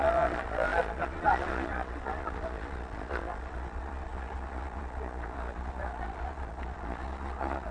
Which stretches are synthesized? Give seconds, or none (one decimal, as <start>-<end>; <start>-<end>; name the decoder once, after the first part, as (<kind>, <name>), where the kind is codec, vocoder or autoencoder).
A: 0.0-7.7 (vocoder, Vocos)